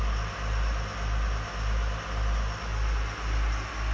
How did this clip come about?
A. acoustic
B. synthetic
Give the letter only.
A